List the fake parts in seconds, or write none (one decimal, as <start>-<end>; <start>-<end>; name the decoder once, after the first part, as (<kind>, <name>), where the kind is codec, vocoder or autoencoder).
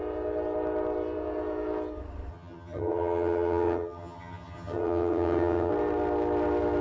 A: 2.3-5.7 (vocoder, HiFi-GAN)